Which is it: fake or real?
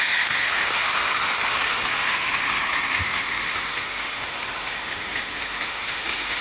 fake